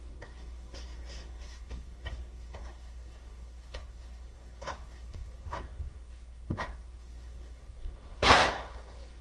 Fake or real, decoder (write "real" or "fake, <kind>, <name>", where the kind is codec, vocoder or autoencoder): fake, codec, SNAC